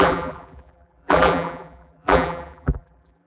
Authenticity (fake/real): fake